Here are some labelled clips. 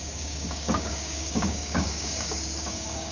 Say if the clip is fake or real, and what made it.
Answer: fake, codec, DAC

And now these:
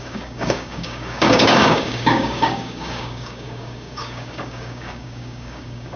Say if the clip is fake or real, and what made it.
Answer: fake, codec, DAC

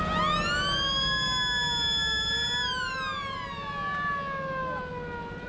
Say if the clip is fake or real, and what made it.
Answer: real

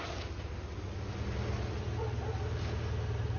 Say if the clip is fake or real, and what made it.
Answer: real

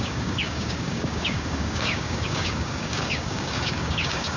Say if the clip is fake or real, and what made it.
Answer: fake, codec, DAC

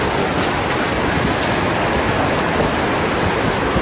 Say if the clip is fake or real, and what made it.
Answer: real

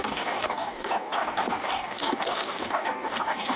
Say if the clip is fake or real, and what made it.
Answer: fake, codec, DAC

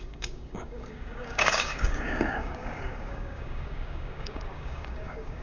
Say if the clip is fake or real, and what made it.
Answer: fake, codec, DAC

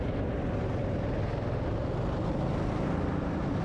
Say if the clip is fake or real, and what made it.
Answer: real